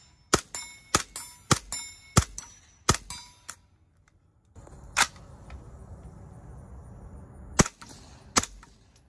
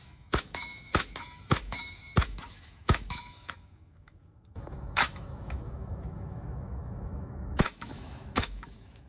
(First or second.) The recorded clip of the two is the first